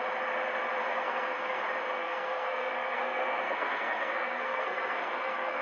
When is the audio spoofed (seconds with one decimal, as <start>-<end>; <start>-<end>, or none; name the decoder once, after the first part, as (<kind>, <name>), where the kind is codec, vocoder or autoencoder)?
0.8-1.6 (codec, SNAC); 2.0-5.6